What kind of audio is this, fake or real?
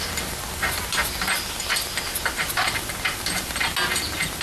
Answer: real